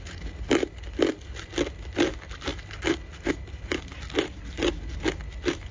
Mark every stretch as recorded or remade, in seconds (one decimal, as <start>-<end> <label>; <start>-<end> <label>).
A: 0.0-5.7 recorded